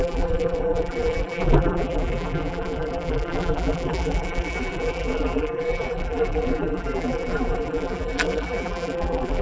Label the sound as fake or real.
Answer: fake